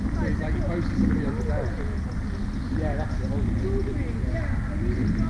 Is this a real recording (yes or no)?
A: yes